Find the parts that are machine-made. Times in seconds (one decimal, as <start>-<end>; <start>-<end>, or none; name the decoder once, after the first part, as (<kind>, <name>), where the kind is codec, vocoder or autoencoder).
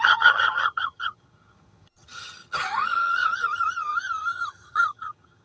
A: 0.0-5.4 (vocoder, HiFi-GAN)